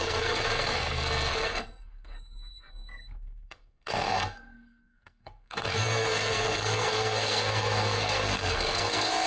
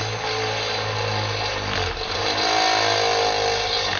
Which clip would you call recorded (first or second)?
second